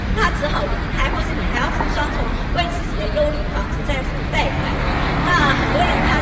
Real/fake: real